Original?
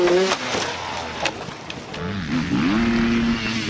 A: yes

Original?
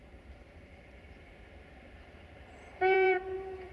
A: no